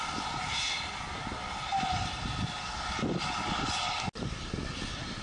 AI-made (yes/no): no